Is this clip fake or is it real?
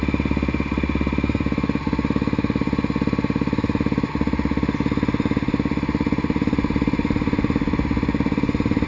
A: real